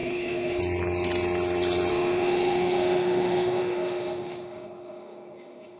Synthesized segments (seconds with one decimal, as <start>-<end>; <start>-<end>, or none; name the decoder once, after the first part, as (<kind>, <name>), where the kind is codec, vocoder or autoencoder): 0.0-0.6 (autoencoder, DAC-VAE); 1.9-5.8

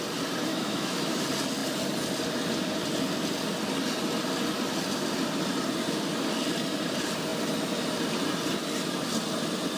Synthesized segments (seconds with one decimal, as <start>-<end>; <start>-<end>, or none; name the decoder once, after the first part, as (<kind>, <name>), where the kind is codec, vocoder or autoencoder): 0.5-1.2 (autoencoder, DAC-VAE)